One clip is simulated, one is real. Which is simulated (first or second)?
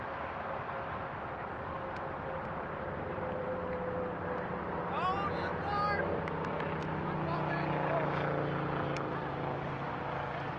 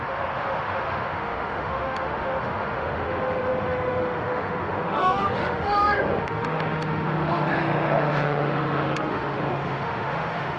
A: second